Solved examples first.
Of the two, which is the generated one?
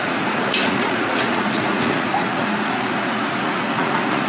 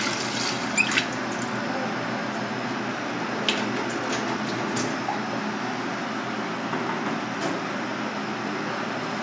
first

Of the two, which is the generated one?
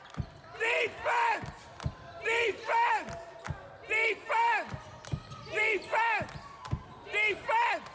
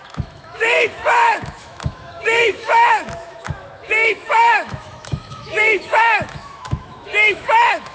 second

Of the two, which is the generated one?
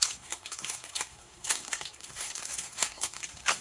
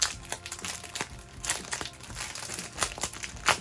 first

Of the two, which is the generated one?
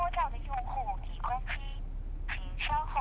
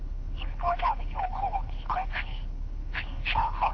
second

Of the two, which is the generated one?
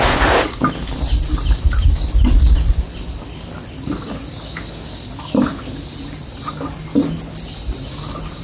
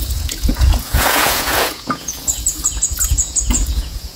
second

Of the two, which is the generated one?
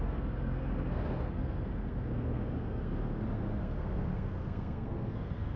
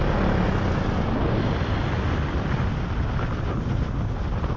first